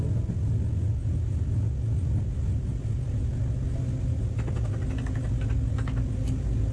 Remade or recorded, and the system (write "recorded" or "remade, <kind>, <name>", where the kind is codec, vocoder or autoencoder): recorded